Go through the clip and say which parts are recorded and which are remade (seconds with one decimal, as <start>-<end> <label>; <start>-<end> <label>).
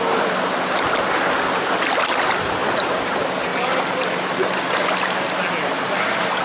0.0-6.4 recorded